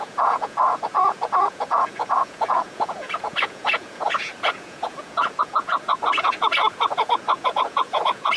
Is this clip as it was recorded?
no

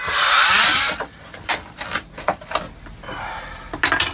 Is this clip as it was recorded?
yes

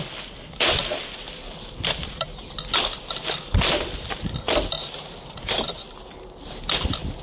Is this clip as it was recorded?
yes